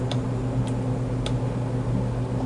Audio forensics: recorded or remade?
recorded